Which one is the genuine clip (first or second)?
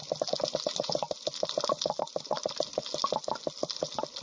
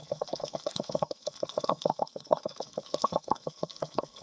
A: first